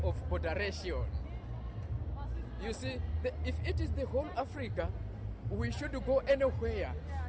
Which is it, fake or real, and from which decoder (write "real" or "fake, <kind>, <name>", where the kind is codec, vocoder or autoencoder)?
real